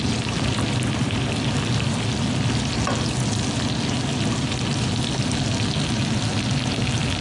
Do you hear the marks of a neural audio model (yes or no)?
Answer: no